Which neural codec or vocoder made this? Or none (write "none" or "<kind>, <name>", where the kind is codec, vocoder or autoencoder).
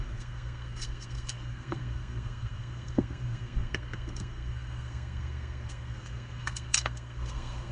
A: codec, SNAC